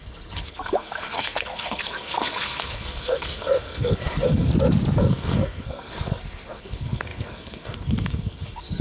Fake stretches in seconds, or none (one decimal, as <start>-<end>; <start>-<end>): 0.0-4.5; 5.0-8.8